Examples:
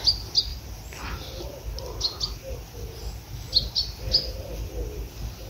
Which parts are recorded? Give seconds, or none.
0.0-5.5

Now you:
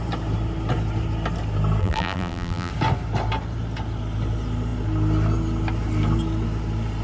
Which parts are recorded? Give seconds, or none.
0.0-1.8; 2.7-7.0